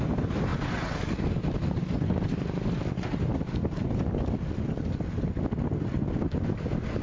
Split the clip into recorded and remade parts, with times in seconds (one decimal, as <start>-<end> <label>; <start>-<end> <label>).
0.0-7.0 recorded